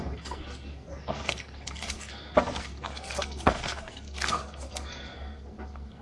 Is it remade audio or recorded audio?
remade